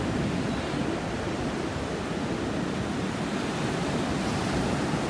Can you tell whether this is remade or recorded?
recorded